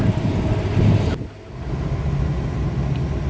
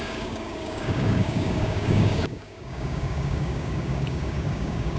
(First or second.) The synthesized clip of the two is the second